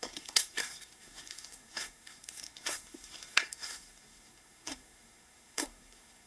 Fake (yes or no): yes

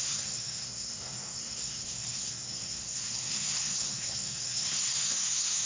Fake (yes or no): yes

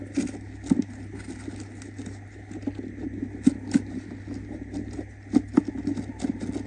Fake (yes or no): no